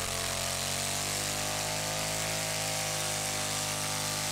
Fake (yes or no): no